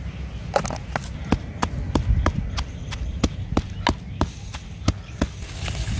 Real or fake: real